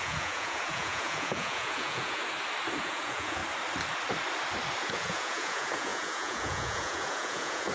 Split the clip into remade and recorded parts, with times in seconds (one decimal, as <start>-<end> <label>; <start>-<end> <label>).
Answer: 0.0-2.2 remade; 2.2-2.8 recorded; 2.8-3.4 remade; 3.4-4.8 recorded; 4.8-7.7 remade